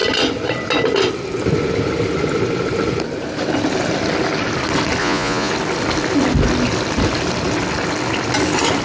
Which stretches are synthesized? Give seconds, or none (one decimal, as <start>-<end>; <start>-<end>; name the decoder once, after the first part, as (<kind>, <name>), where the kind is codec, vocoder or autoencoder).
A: 5.0-5.5 (vocoder, Vocos)